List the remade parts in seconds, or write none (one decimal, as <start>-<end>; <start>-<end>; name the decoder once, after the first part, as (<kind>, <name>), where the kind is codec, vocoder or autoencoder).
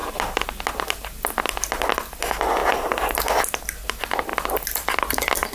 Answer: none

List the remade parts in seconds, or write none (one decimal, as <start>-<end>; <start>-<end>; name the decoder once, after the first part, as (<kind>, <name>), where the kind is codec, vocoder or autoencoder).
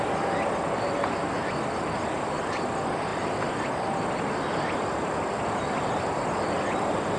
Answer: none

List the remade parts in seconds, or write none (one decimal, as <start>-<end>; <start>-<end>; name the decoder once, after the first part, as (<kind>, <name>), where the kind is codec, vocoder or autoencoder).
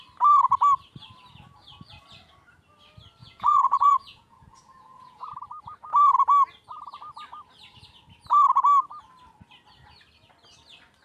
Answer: 3.2-5.3 (vocoder, Vocos)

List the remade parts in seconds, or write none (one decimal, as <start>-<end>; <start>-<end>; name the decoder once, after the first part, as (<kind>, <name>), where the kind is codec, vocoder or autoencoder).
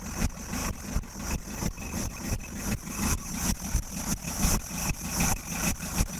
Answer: none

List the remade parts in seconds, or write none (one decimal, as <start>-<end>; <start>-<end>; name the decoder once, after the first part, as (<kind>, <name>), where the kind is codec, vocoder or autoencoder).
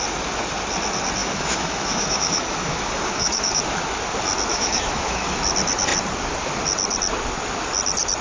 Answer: 1.2-3.6 (autoencoder, DAC-VAE); 4.5-5.4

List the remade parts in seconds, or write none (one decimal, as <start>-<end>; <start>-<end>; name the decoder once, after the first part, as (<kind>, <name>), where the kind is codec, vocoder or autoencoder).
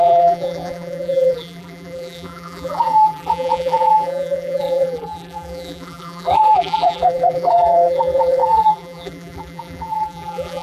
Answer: 0.0-10.6 (vocoder, BigVGAN v2)